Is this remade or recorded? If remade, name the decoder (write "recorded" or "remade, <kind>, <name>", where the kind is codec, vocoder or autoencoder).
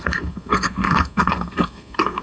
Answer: remade, codec, SNAC